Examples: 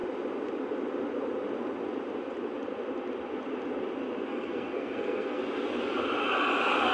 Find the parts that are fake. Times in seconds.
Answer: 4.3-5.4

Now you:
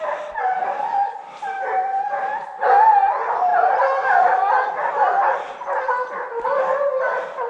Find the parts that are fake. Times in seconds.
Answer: none

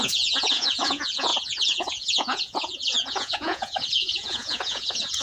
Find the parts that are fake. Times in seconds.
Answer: 0.0-5.2

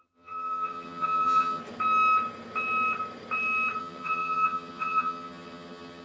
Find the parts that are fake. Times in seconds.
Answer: 0.0-1.6; 3.8-6.0

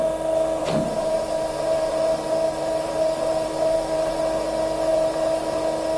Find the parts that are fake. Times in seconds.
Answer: 0.6-4.2; 4.9-5.6

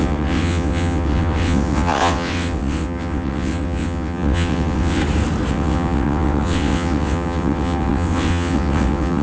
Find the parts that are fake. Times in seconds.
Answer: 0.0-5.0; 5.5-9.2

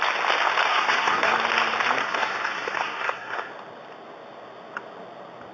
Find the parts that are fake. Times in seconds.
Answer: 0.7-1.3; 2.0-3.5

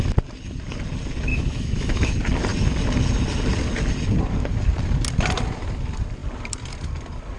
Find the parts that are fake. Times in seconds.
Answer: 1.3-2.1